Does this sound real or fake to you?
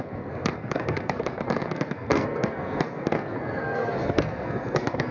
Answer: fake